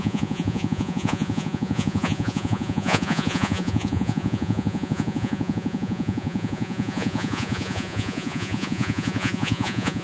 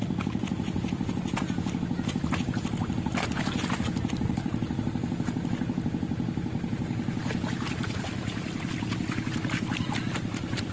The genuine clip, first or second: second